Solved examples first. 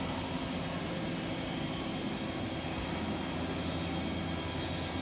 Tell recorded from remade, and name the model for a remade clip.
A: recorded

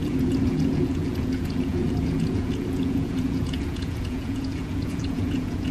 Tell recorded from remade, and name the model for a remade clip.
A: remade, vocoder, Vocos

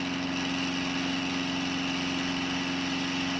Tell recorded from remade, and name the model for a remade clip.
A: recorded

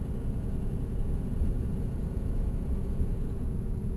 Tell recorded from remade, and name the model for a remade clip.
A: remade, vocoder, Vocos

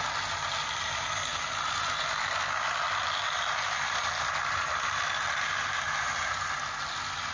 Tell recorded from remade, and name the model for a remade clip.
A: recorded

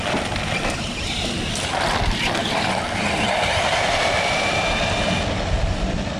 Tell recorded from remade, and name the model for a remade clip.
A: recorded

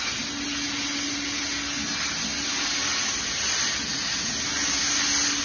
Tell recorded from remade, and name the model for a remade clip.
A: recorded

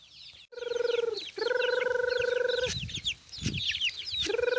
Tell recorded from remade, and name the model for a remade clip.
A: recorded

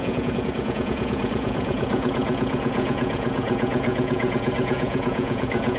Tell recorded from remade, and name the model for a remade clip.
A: remade, vocoder, Vocos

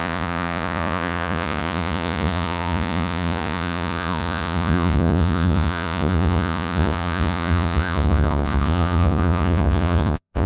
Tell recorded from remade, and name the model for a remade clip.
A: remade, vocoder, Vocos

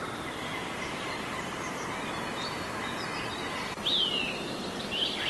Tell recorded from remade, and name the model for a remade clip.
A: recorded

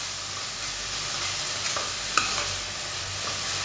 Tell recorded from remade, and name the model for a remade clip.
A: recorded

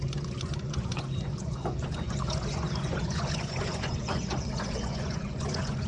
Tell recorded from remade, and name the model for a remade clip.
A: remade, vocoder, Vocos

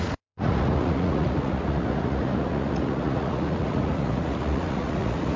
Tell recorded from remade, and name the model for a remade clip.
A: remade, vocoder, Vocos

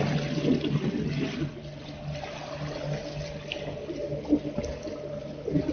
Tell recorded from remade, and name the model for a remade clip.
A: recorded